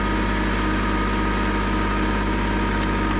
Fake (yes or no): no